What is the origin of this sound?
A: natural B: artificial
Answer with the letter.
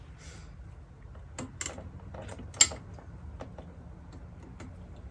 A